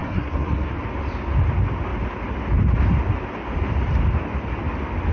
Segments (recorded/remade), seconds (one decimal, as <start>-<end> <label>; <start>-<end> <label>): 0.0-0.7 remade; 0.7-5.1 recorded

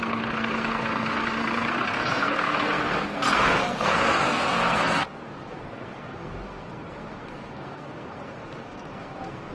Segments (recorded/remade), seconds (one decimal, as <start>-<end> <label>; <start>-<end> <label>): 0.0-9.5 remade

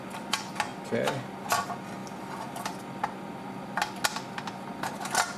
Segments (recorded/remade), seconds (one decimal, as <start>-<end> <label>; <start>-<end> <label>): 0.0-5.4 recorded

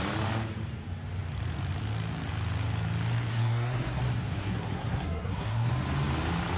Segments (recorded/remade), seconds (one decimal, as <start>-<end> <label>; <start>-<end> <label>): 0.0-3.3 recorded; 3.3-4.0 remade; 4.0-4.4 recorded; 4.4-5.7 remade; 5.7-6.6 recorded

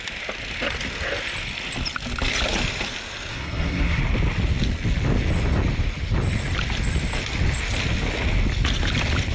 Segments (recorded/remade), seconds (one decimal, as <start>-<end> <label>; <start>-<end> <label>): 0.0-3.3 recorded; 3.3-4.0 remade; 4.0-9.3 recorded